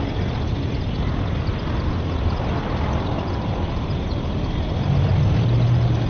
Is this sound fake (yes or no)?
no